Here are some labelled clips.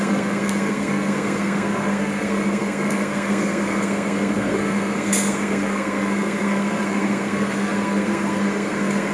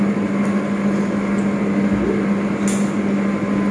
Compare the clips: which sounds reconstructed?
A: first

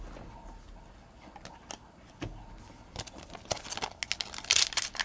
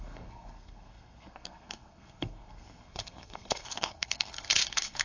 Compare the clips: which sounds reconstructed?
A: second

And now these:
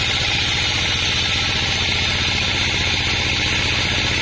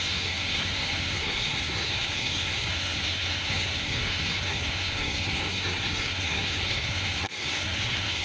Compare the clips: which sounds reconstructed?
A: second